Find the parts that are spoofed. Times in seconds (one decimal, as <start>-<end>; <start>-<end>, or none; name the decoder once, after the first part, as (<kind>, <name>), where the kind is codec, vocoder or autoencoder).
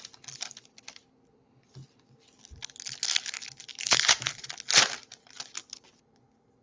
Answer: 3.7-4.5 (vocoder, BigVGAN v2)